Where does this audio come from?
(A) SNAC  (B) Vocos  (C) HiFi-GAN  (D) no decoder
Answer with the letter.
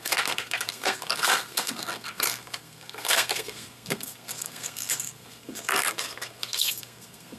A